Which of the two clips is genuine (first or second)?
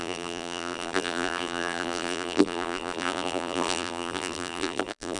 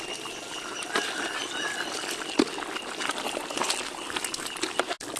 second